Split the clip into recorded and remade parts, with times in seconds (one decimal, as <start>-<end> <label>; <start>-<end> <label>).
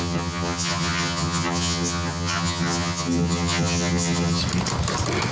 0.0-4.4 remade; 4.4-5.3 recorded